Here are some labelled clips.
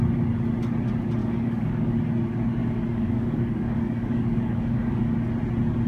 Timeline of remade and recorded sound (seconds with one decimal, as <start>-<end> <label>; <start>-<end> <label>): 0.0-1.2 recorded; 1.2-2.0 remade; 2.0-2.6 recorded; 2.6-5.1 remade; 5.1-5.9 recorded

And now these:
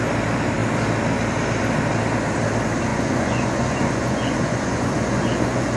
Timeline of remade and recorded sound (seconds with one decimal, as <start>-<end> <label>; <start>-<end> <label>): 0.0-2.9 recorded; 2.9-5.8 remade

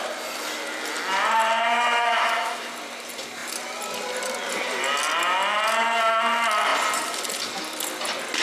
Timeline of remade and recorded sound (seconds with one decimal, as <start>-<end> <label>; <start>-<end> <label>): 0.0-1.7 recorded; 1.7-2.7 remade; 2.7-8.4 recorded